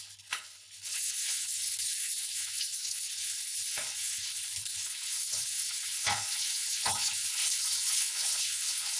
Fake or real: fake